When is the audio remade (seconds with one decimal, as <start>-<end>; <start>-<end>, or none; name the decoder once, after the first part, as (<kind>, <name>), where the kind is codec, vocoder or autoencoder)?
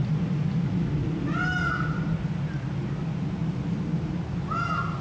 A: none